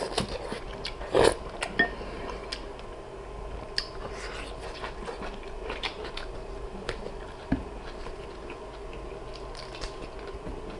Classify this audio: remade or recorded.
recorded